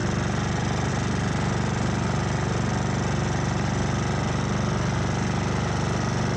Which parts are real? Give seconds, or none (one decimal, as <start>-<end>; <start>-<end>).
0.0-6.4